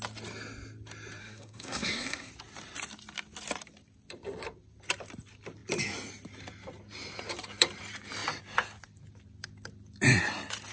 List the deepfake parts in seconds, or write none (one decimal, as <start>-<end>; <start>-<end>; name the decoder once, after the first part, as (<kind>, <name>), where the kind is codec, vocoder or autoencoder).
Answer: 1.2-2.3 (codec, SNAC)